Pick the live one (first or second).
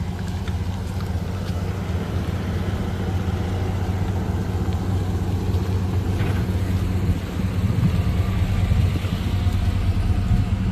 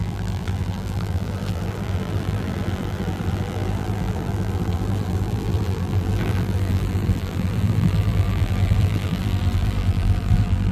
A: first